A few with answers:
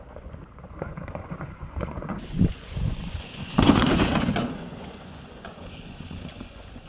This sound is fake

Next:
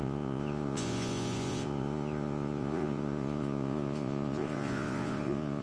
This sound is fake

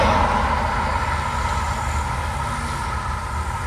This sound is real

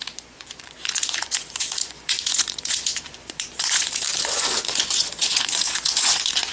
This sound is fake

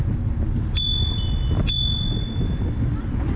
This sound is real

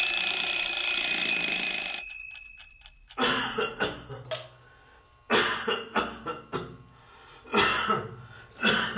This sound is real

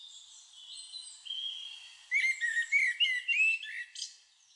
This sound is real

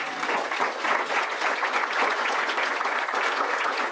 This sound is fake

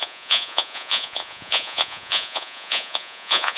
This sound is fake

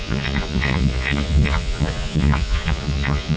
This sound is fake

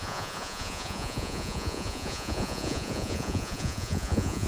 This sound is fake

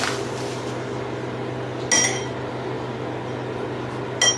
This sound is real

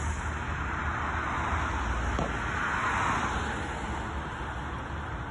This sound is real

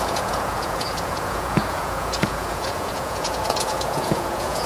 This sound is fake